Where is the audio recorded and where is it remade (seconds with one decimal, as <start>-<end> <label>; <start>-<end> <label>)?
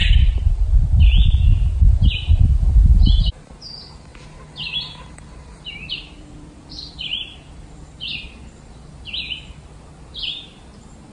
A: 0.0-1.0 remade; 1.0-11.1 recorded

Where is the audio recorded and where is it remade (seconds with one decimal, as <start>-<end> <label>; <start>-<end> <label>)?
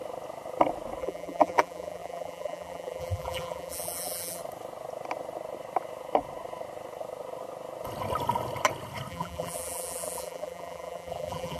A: 0.0-1.0 recorded; 1.0-4.4 remade; 4.4-9.1 recorded; 9.1-11.6 remade